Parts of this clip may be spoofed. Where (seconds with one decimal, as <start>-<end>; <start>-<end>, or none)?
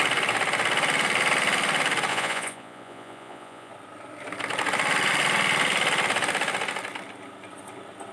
2.1-3.7